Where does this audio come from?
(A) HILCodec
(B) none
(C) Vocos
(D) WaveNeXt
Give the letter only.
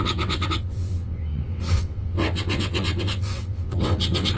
D